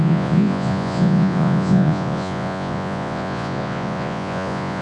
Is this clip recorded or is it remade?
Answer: remade